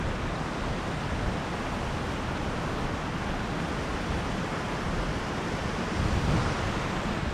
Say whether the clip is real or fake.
real